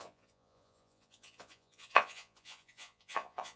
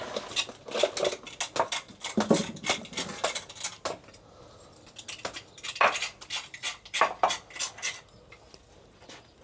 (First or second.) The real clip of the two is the second